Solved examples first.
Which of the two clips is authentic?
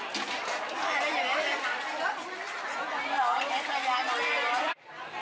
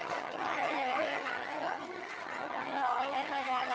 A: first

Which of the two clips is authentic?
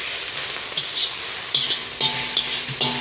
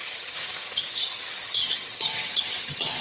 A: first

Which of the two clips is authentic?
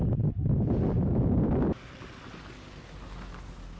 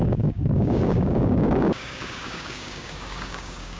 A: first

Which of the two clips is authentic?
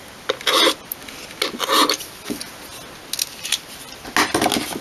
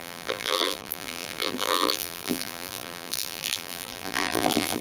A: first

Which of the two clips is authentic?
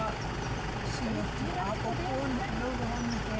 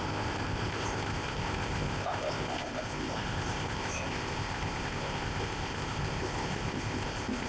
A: first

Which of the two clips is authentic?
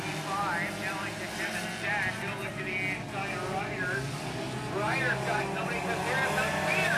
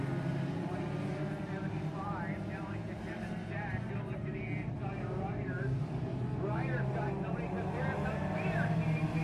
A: first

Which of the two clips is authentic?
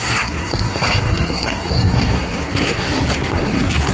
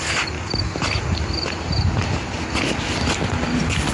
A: second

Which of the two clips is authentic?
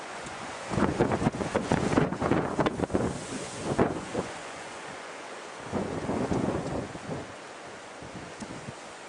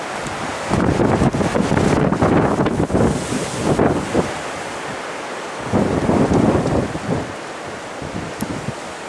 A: second